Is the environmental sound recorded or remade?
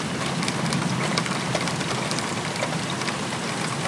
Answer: recorded